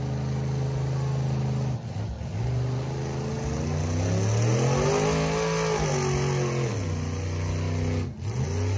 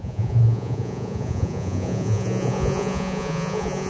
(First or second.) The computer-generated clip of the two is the second